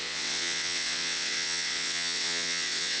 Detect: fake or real fake